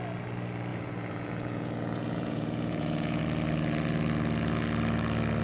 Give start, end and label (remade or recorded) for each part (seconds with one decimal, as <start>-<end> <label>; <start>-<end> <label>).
0.0-0.7 recorded; 0.7-3.2 remade; 3.2-5.4 recorded